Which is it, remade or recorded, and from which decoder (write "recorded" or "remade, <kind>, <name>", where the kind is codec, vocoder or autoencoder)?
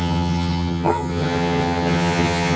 remade, vocoder, HiFi-GAN